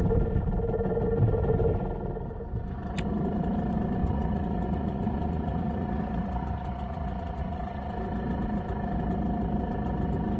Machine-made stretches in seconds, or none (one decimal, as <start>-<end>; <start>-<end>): 4.0-7.9